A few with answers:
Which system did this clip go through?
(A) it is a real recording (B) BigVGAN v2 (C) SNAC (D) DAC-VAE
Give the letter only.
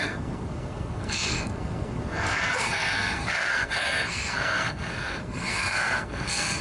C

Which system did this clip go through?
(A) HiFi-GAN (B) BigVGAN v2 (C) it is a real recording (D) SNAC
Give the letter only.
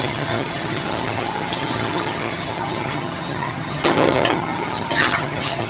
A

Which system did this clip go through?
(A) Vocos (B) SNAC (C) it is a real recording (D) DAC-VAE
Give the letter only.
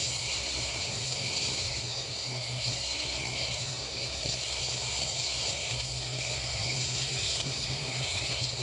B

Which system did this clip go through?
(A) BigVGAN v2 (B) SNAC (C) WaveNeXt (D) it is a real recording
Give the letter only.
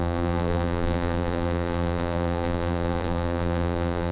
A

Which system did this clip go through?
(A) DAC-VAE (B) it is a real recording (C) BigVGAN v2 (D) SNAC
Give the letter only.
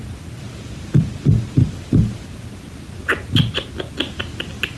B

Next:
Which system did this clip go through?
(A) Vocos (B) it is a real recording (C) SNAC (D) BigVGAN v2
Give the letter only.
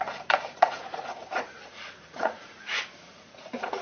A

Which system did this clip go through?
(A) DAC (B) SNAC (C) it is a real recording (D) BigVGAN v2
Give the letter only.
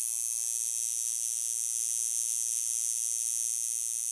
C